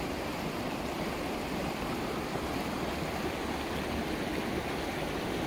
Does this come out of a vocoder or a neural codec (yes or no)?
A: no